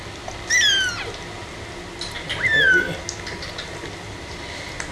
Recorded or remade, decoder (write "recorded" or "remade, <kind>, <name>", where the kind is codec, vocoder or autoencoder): recorded